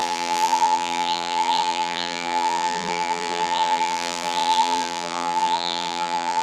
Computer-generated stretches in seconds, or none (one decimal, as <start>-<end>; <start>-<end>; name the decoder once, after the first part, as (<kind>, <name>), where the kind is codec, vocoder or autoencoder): 0.0-6.4 (vocoder, BigVGAN v2)